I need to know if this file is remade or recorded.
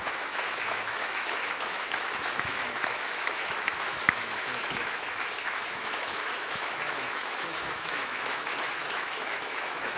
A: remade